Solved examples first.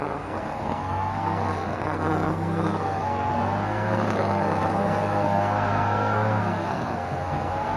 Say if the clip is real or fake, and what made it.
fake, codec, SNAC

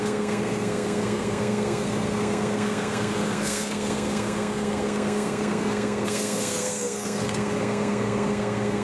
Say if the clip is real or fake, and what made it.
fake, codec, SNAC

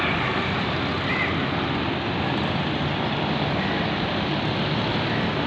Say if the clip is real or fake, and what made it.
real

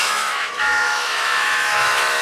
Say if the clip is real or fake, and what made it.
fake, autoencoder, DAC-VAE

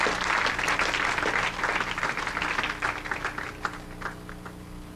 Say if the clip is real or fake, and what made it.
real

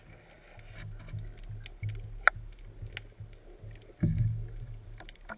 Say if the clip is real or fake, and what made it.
real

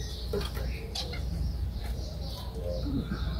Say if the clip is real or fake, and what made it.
real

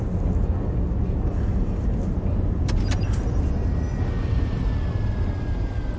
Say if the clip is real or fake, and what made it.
real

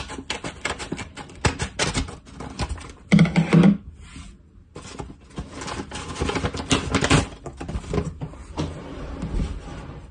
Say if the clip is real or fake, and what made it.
real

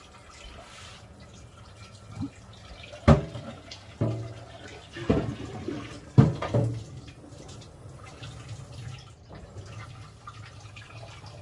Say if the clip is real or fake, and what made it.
real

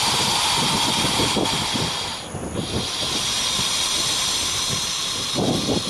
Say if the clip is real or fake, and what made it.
real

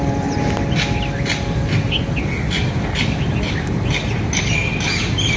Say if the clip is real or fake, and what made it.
real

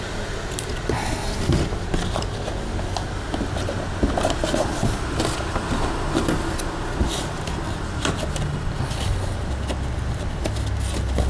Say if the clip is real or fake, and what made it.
real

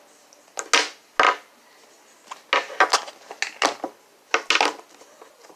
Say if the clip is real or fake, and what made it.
real